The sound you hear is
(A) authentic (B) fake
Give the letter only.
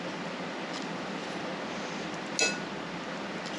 A